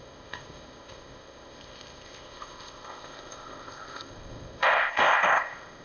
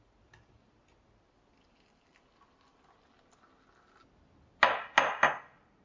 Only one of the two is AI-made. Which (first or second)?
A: first